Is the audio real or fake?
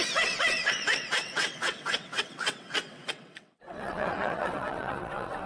fake